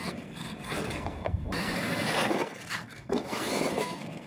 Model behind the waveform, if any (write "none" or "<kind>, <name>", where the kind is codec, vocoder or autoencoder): codec, SNAC